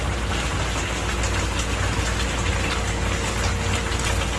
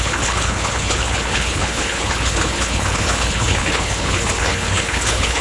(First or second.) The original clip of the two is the first